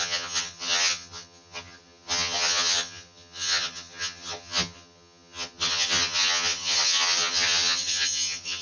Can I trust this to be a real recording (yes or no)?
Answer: no